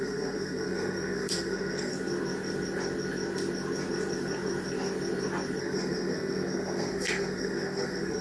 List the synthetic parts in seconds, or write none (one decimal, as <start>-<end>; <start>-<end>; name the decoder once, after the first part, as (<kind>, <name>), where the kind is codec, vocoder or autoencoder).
0.0-1.9 (codec, SNAC); 5.6-8.2